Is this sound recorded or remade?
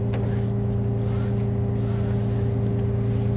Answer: recorded